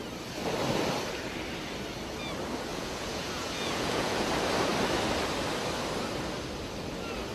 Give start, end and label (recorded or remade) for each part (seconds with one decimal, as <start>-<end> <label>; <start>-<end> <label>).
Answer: 0.0-2.7 recorded; 2.7-4.3 remade; 4.3-7.3 recorded